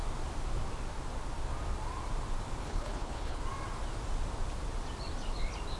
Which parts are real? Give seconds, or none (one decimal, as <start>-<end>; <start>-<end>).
0.0-2.6; 3.4-5.8